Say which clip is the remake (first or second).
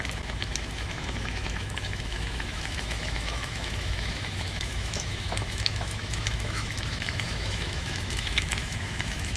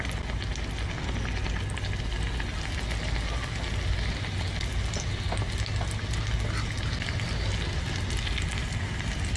first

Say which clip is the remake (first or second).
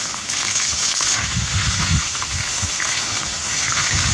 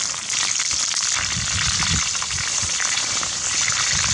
first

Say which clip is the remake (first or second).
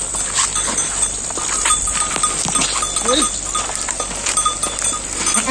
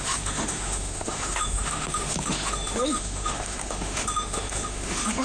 second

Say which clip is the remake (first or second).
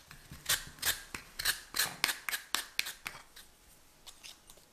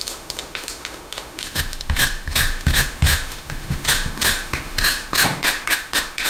second